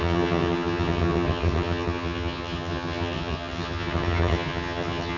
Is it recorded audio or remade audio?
remade